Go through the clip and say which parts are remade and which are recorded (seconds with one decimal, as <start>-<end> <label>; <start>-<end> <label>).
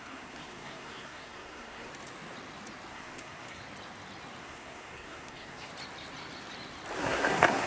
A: 0.0-1.9 remade; 1.9-2.9 recorded; 2.9-3.6 remade; 3.6-4.4 recorded; 4.4-5.7 remade; 5.7-7.0 recorded; 7.0-7.7 remade